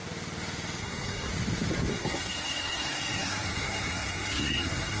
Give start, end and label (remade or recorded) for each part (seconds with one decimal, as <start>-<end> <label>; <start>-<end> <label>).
0.0-0.8 recorded; 0.8-1.3 remade; 1.3-1.9 recorded; 1.9-5.0 remade